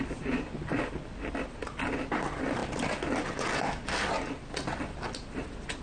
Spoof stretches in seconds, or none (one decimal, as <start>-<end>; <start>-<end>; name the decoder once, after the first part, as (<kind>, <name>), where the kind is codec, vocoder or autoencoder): none